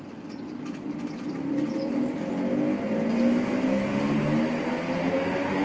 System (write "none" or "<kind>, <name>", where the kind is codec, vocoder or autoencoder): none